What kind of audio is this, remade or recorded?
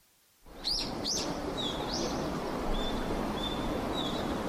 remade